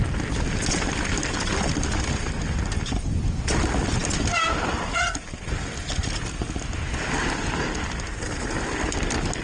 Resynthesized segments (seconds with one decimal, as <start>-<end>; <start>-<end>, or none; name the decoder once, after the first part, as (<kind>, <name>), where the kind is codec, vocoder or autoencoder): none